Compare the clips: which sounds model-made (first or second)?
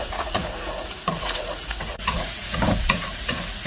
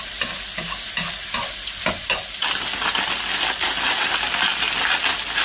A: first